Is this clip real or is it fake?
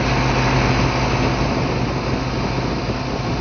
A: real